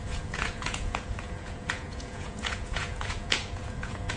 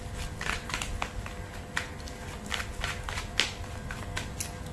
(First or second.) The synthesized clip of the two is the first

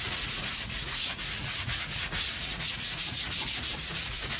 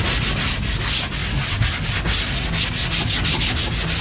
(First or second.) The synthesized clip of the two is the first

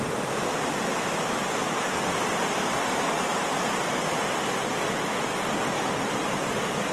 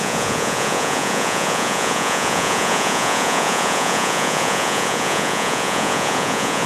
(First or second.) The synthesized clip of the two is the second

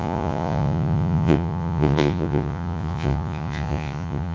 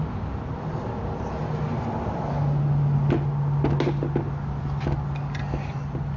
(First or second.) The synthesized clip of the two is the first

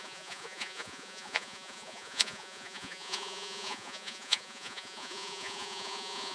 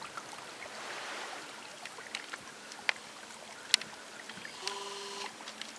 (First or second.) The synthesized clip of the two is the first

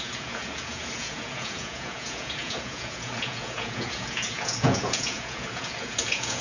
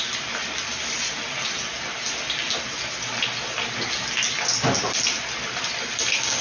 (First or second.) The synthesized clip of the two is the first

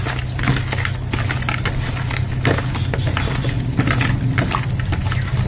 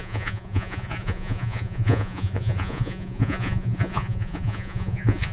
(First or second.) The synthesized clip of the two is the second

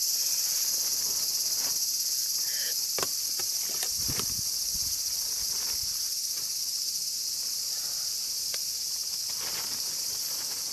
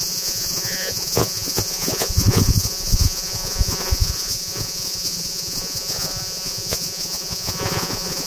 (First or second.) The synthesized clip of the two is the second